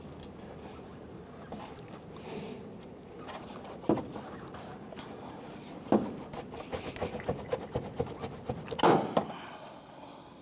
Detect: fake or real real